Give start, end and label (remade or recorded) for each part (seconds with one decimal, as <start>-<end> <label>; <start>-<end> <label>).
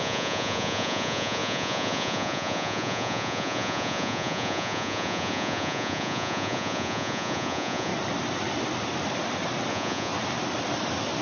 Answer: 0.0-7.9 remade; 7.9-9.7 recorded; 9.7-10.1 remade; 10.1-11.2 recorded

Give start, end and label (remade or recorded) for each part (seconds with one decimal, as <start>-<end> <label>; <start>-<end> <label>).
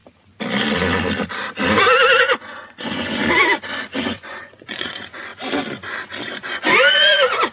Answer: 0.0-2.2 recorded; 2.2-3.2 remade; 3.2-4.0 recorded; 4.0-5.3 remade; 5.3-6.2 recorded; 6.2-7.5 remade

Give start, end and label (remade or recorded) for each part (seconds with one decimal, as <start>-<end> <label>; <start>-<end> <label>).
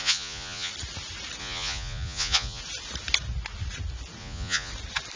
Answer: 0.0-0.7 remade; 0.7-1.4 recorded; 1.4-2.6 remade; 2.6-4.2 recorded; 4.2-4.7 remade; 4.7-5.2 recorded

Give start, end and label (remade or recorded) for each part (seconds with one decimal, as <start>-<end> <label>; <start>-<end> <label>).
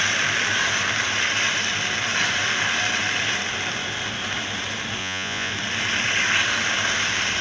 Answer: 0.0-5.0 recorded; 5.0-5.5 remade; 5.5-7.4 recorded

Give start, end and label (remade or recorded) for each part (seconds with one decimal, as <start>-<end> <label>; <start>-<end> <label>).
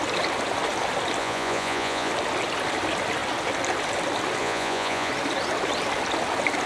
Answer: 0.0-1.2 recorded; 1.2-2.1 remade; 2.1-4.4 recorded; 4.4-5.1 remade; 5.1-6.7 recorded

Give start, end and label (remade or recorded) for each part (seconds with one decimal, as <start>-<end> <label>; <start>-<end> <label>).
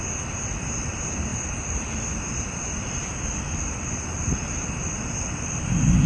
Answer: 0.0-6.1 recorded